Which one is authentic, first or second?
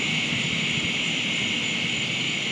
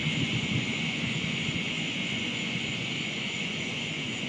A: first